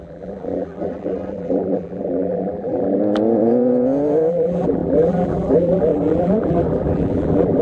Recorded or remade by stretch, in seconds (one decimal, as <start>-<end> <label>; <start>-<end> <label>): 0.0-3.0 remade; 3.0-4.3 recorded; 4.3-7.6 remade